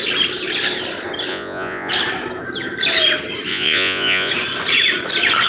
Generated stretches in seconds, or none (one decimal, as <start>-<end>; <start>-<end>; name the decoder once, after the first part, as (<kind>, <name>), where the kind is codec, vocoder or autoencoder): 1.3-1.9 (vocoder, Vocos); 3.5-4.3